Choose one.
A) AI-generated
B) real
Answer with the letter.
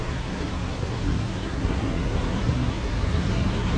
A